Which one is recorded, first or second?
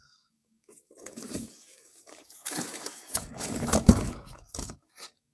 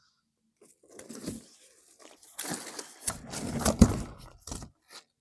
second